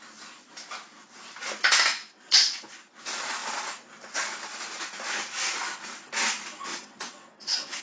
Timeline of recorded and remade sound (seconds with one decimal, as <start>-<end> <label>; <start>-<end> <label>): 0.0-2.0 recorded; 2.0-2.6 remade; 2.6-6.7 recorded; 6.7-7.8 remade